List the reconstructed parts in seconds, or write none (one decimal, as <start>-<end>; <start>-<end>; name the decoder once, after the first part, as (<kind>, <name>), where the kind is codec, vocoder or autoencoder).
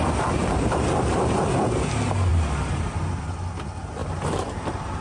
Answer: 0.4-1.4 (vocoder, BigVGAN v2); 2.3-3.0; 4.0-5.0